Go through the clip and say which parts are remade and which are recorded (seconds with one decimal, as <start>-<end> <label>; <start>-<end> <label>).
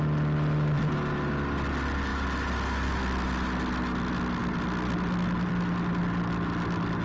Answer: 0.0-7.0 recorded